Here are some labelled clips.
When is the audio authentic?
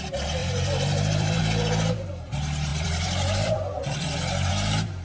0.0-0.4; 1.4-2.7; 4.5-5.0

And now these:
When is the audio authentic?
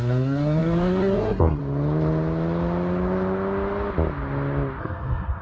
1.6-4.8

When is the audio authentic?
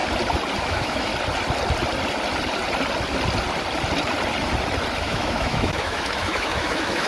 0.0-0.6; 1.1-5.0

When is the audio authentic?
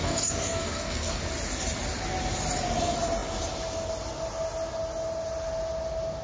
1.2-6.2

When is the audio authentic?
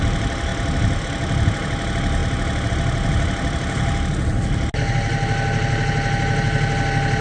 0.0-7.2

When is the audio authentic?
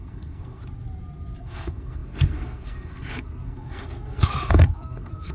0.6-1.4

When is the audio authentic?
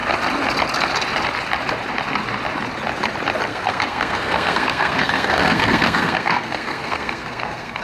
0.0-3.5